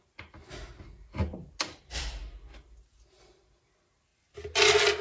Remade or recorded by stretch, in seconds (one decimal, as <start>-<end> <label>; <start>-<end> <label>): 0.0-5.0 recorded